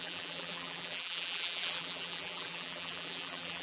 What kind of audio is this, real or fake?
fake